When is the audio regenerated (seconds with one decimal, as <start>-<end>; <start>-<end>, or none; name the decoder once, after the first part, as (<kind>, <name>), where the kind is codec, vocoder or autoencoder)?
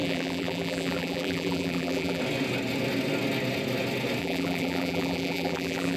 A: 0.0-2.2 (vocoder, BigVGAN v2); 4.2-6.0